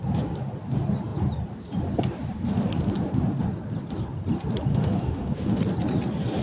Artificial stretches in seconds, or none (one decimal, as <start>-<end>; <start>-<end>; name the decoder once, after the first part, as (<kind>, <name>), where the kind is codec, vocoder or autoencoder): 4.7-5.6 (autoencoder, DAC-VAE)